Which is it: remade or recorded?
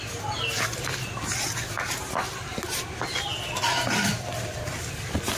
recorded